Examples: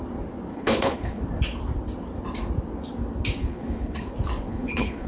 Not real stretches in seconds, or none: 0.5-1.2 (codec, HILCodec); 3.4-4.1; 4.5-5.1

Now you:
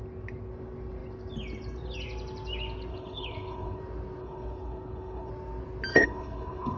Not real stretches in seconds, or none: 2.9-3.8 (codec, HILCodec); 4.2-5.3; 5.9-6.8

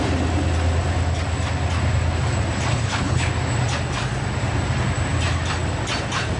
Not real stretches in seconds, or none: 2.7-3.3 (codec, HILCodec)